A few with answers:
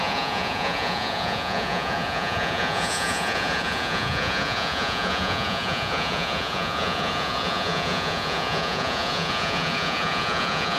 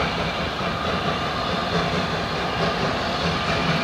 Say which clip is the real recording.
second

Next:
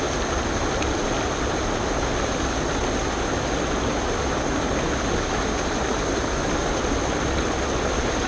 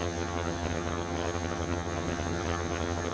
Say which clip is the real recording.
first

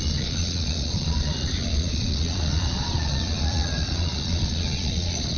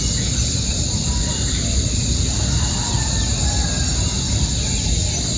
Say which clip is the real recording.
second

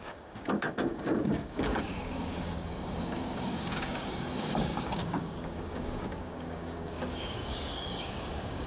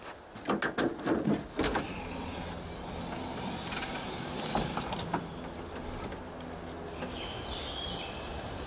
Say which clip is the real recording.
second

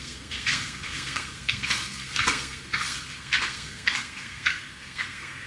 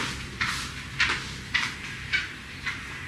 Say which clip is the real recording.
second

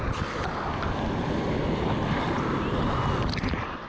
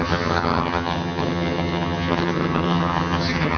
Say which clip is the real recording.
first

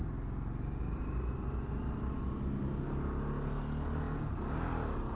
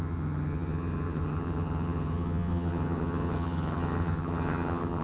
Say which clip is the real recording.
first